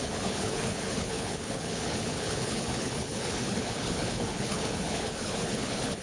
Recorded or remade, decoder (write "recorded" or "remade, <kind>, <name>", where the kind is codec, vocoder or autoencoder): remade, codec, HILCodec